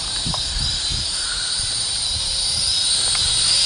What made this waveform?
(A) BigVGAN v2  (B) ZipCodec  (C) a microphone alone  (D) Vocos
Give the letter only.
A